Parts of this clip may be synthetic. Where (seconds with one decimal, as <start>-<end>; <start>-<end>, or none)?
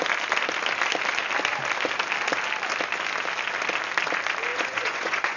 4.5-5.4